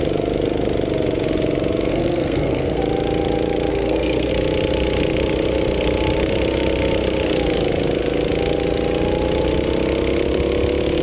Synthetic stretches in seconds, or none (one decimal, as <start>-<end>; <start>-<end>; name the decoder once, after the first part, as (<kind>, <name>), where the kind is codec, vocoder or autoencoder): 1.9-2.8 (codec, SNAC); 3.7-4.3